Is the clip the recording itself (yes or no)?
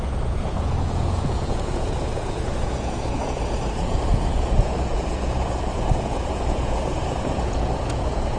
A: no